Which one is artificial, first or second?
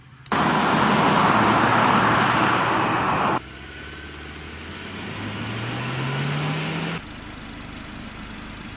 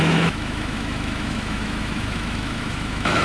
second